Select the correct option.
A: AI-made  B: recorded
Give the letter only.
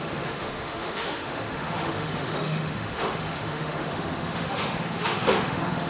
A